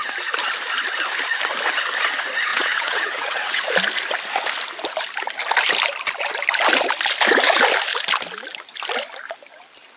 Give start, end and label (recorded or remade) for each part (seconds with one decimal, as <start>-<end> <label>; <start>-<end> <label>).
0.0-2.5 recorded; 2.5-3.7 remade; 3.7-10.0 recorded